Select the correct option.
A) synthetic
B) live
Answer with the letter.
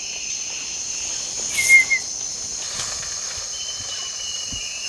B